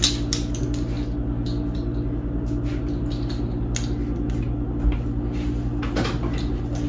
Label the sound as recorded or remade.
recorded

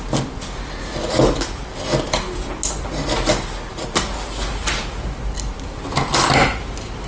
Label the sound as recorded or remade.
recorded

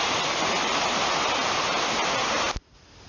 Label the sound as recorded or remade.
recorded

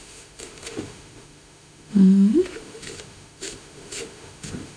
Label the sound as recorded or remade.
remade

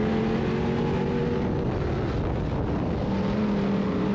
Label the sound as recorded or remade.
recorded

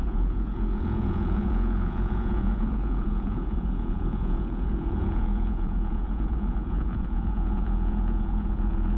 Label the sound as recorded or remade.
remade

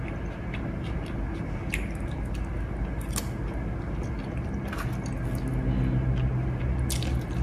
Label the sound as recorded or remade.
recorded